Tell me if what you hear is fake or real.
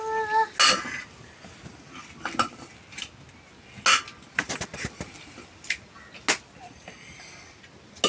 real